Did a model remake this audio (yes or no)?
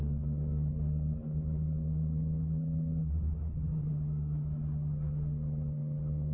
no